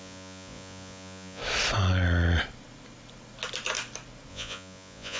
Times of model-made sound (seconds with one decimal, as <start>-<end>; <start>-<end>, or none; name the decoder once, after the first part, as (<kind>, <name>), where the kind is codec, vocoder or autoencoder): 0.0-1.4 (vocoder, Vocos); 4.3-5.2